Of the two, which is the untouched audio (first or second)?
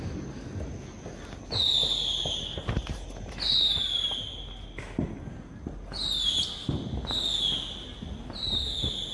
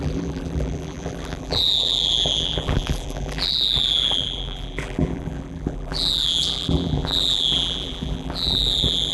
first